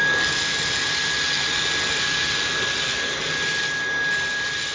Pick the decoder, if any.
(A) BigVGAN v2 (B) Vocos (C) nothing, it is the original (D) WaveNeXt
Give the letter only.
C